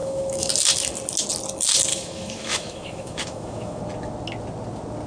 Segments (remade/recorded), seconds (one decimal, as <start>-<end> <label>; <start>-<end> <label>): 0.0-0.5 remade; 0.5-1.9 recorded; 1.9-3.8 remade; 3.8-5.1 recorded